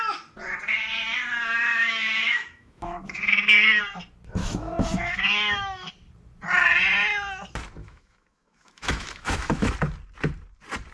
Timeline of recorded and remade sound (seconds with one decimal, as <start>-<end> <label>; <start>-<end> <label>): 0.0-1.7 recorded; 1.7-3.8 remade; 3.8-4.4 recorded; 4.4-5.9 remade; 5.9-7.8 recorded; 7.8-9.7 remade; 9.7-10.9 recorded